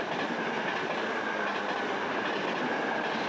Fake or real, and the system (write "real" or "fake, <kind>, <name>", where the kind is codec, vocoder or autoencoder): real